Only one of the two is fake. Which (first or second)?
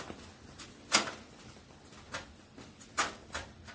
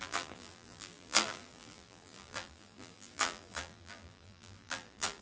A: second